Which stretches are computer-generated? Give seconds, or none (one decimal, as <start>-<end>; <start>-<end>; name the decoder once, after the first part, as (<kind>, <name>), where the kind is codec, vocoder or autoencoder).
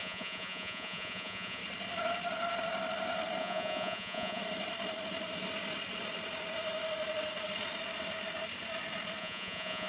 0.0-1.6 (vocoder, Vocos); 3.4-4.4; 9.2-9.9